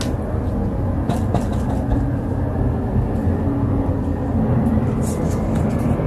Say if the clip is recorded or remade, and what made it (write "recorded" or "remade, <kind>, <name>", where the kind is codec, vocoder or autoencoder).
recorded